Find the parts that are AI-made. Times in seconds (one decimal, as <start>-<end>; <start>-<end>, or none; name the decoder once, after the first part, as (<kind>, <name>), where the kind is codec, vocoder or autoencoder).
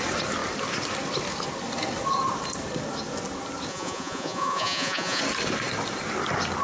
3.7-5.2 (vocoder, Vocos)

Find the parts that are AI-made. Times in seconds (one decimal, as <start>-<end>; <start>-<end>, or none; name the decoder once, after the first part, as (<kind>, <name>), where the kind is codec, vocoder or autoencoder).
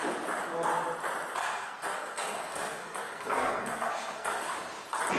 1.4-4.5 (codec, SNAC)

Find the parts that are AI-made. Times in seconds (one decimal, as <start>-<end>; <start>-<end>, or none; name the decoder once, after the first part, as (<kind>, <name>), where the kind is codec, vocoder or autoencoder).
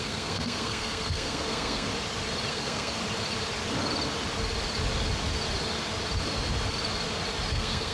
0.0-1.9 (codec, SNAC); 2.5-3.0; 7.5-7.9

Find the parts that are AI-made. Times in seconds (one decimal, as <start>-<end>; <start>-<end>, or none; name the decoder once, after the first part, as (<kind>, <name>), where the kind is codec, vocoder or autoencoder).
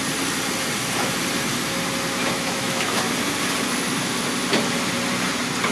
2.2-3.1 (autoencoder, DAC-VAE)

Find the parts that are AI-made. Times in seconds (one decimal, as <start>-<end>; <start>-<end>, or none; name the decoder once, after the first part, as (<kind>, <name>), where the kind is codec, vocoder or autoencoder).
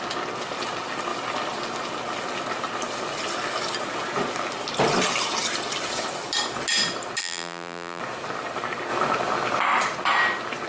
7.2-8.0 (vocoder, BigVGAN v2)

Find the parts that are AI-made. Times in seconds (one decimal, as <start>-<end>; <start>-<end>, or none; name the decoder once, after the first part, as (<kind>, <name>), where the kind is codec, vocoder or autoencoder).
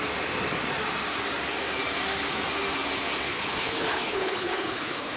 3.3-5.2 (codec, HILCodec)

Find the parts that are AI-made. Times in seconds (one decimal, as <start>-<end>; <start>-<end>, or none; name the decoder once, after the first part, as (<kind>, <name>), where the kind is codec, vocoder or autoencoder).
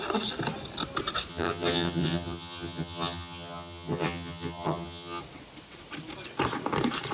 1.3-5.2 (vocoder, HiFi-GAN)